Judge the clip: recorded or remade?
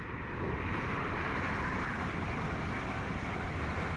recorded